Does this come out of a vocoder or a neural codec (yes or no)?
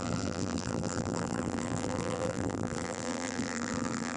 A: yes